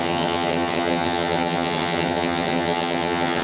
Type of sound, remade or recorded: remade